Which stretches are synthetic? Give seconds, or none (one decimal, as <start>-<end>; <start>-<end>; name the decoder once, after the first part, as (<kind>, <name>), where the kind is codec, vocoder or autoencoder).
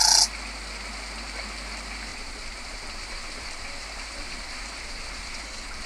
2.1-5.9 (vocoder, BigVGAN v2)